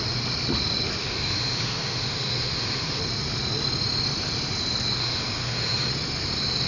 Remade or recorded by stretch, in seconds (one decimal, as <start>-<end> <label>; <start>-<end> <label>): 0.0-1.0 recorded; 1.0-3.0 remade; 3.0-5.0 recorded; 5.0-5.9 remade; 5.9-6.7 recorded